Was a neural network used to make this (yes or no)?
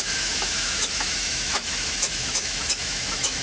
yes